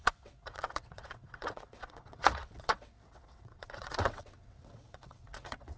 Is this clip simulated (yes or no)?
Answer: yes